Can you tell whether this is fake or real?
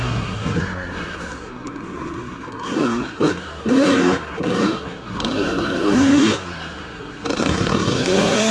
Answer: fake